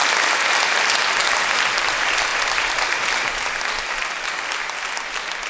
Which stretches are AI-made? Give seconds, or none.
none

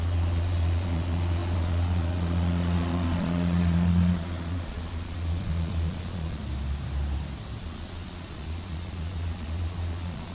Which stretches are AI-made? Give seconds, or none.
0.0-6.4 (vocoder, Vocos); 7.6-10.3

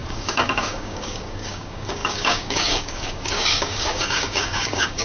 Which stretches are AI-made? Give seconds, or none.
0.0-5.0 (codec, DAC)

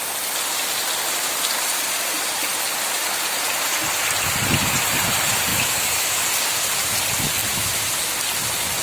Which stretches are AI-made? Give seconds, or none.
5.5-6.2 (autoencoder, DAC-VAE)

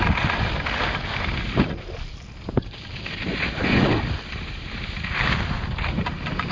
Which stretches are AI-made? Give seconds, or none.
3.3-3.9 (vocoder, Vocos)

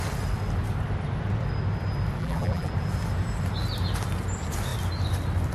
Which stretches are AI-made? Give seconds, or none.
2.2-2.7 (vocoder, BigVGAN v2)